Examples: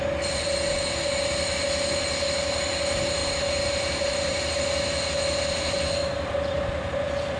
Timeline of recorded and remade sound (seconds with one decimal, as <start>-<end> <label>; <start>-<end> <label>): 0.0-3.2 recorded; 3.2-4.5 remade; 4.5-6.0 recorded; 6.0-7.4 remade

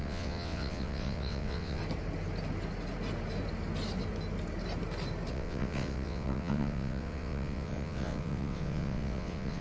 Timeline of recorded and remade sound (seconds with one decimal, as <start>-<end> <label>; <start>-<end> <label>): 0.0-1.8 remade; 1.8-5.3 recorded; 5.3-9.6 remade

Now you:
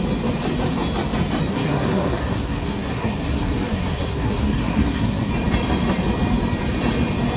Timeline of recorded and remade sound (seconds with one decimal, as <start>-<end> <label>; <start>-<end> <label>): 0.0-1.5 recorded; 1.5-5.3 remade; 5.3-7.4 recorded

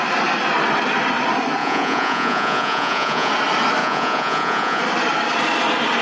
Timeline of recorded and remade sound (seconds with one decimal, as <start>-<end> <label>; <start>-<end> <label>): 0.0-1.6 recorded; 1.6-3.3 remade; 3.3-3.8 recorded; 3.8-4.8 remade; 4.8-6.0 recorded